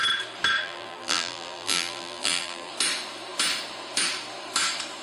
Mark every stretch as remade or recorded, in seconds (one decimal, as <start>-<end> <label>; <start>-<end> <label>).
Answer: 0.0-0.6 recorded; 0.6-2.7 remade; 2.7-5.0 recorded